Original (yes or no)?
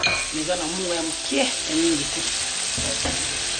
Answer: yes